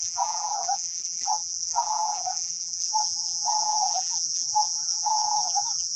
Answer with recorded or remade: remade